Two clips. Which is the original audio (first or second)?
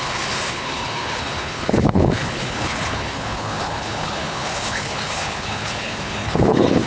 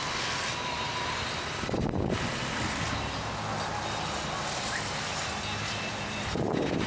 second